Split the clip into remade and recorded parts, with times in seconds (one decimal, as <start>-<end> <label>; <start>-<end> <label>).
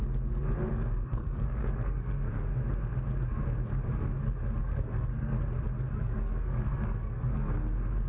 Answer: 0.0-0.7 recorded; 0.7-2.3 remade; 2.3-4.6 recorded; 4.6-5.4 remade; 5.4-5.9 recorded; 5.9-7.5 remade; 7.5-8.1 recorded